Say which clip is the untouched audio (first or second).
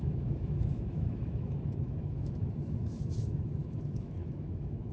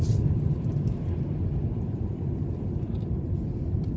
second